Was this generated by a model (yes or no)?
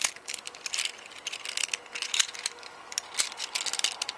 no